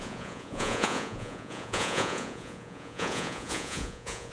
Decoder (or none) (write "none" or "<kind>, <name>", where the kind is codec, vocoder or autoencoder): vocoder, Vocos